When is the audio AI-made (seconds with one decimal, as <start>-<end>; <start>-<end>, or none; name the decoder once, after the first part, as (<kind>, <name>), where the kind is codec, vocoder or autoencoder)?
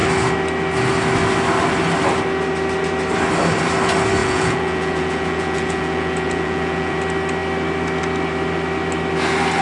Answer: 4.2-7.0 (vocoder, Vocos)